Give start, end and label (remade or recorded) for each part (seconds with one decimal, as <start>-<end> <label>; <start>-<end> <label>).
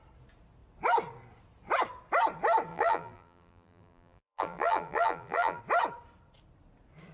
0.0-2.7 recorded; 2.7-5.6 remade; 5.6-7.1 recorded